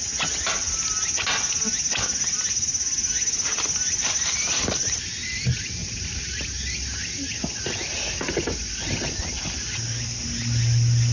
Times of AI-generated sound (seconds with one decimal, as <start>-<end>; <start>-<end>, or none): 5.8-6.6